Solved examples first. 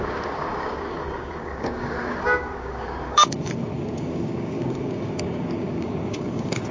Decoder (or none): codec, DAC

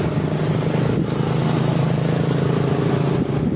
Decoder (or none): none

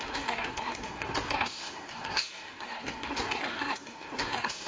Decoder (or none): codec, SNAC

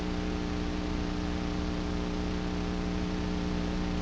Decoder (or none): none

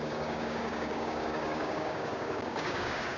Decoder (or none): codec, DAC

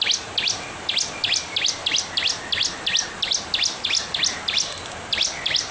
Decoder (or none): none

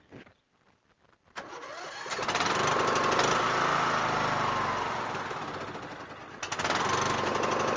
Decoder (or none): none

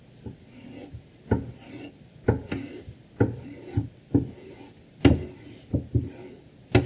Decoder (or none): none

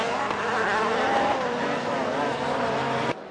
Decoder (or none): none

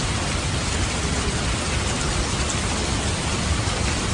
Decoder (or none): none